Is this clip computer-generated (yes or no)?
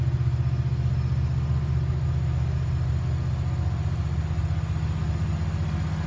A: no